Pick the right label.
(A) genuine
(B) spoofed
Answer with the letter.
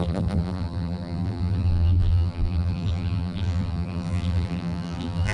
B